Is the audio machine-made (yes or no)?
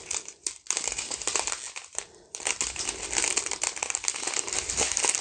no